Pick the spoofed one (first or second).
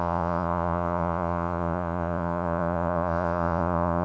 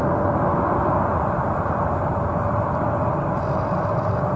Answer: first